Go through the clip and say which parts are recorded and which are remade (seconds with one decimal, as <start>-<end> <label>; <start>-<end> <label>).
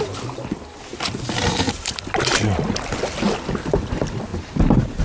0.0-5.0 recorded